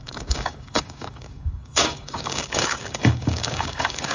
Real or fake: fake